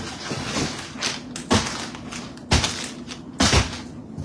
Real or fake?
real